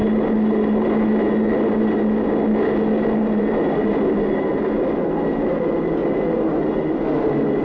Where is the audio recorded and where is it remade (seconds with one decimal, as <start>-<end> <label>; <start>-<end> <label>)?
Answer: 0.0-7.6 recorded